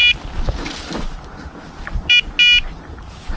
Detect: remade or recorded recorded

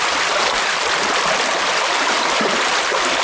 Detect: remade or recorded recorded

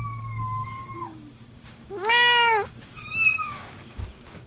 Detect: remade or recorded remade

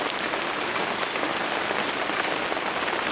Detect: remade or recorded recorded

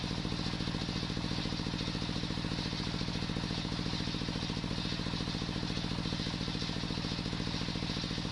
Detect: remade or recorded recorded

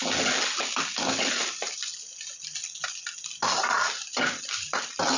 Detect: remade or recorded recorded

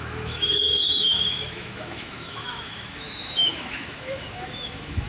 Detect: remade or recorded remade